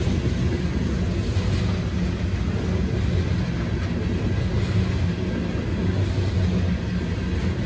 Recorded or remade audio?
recorded